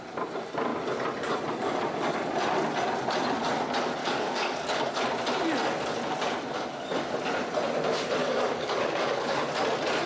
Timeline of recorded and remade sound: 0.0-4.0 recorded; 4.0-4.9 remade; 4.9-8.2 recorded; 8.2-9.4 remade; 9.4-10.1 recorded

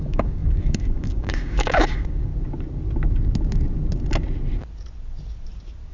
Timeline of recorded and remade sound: 0.0-2.3 remade; 2.3-5.9 recorded

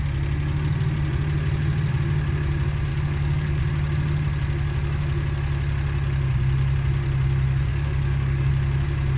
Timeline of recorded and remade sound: 0.0-2.9 recorded; 2.9-3.6 remade; 3.6-7.7 recorded; 7.7-8.5 remade; 8.5-9.2 recorded

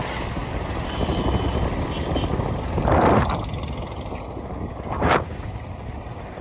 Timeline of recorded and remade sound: 0.0-4.7 recorded; 4.7-5.6 remade; 5.6-6.4 recorded